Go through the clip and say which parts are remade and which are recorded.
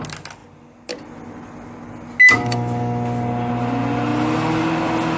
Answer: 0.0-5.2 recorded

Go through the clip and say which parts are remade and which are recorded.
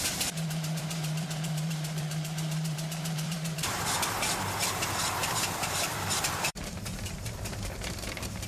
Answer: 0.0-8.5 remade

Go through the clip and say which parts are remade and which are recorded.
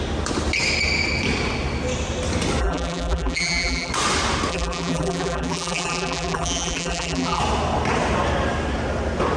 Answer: 0.0-2.6 recorded; 2.6-3.9 remade; 3.9-4.5 recorded; 4.5-7.4 remade; 7.4-9.4 recorded